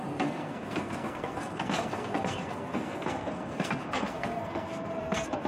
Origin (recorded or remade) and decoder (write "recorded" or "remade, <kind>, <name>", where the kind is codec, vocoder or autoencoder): remade, codec, SNAC